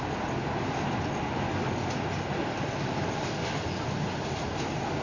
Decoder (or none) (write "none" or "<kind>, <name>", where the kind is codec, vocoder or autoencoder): none